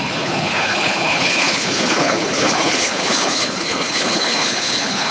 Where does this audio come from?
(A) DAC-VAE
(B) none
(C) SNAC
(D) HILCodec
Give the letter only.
D